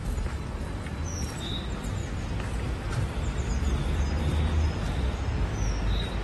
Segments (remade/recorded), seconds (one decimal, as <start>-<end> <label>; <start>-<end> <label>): 0.0-2.0 recorded; 2.0-3.5 remade; 3.5-6.2 recorded